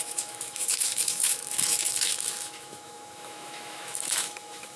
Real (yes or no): no